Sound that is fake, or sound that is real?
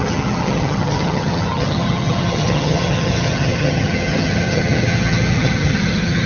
fake